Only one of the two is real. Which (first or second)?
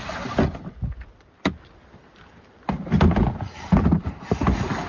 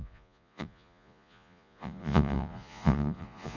first